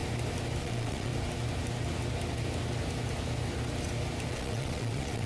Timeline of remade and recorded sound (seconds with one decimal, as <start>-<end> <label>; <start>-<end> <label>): 0.0-0.6 recorded; 0.6-1.1 remade; 1.1-4.3 recorded; 4.3-5.3 remade